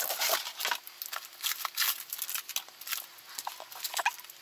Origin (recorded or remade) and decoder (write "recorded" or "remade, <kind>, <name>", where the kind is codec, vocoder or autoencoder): recorded